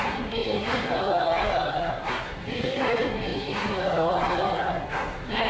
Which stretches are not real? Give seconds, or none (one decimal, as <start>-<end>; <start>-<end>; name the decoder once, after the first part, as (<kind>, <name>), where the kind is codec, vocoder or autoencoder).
0.0-5.5 (codec, SNAC)